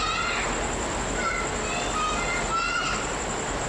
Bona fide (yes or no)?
yes